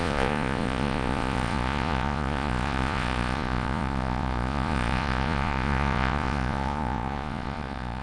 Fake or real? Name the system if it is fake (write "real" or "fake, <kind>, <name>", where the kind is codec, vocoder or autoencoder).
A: fake, vocoder, Vocos